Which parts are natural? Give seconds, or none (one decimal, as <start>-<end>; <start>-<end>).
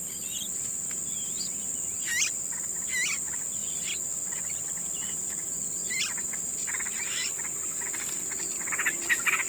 0.0-9.5